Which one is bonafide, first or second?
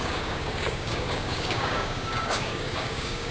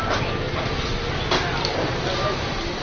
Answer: second